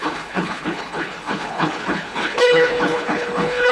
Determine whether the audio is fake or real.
fake